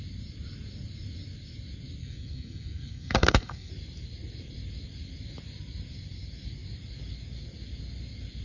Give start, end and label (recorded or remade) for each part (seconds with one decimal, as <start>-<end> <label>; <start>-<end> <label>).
0.0-2.0 recorded; 2.0-3.7 remade; 3.7-8.4 recorded